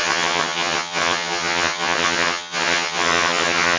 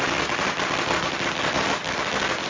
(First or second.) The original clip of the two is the second